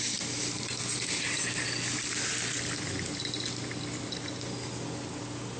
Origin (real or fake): real